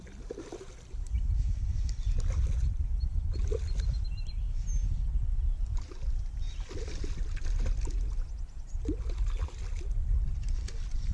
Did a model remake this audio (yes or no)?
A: no